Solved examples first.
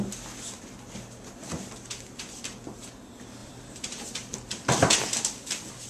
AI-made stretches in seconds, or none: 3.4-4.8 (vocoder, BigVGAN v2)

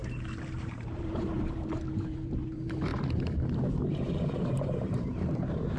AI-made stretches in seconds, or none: 0.6-2.9 (vocoder, BigVGAN v2); 4.3-5.8

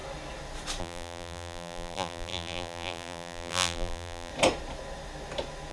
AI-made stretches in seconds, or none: 0.8-4.3 (vocoder, BigVGAN v2)

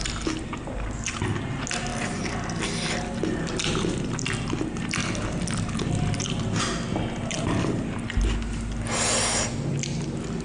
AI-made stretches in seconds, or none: none